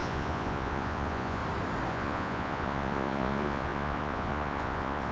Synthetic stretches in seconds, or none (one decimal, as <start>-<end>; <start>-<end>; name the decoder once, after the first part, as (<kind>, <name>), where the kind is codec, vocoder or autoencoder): 0.0-1.4 (vocoder, Vocos); 1.9-5.1